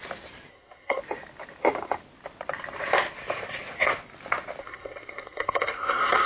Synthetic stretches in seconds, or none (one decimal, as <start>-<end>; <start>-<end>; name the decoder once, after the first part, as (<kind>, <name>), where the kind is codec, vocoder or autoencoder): 0.5-1.0 (codec, SNAC); 4.6-6.3